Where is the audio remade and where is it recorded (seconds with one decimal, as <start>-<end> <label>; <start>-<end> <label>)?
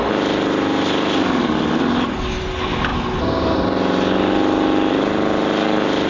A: 0.0-6.1 recorded